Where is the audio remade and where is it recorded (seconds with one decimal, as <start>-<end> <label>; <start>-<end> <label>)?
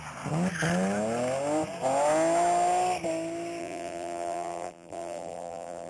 0.0-3.6 recorded; 3.6-5.9 remade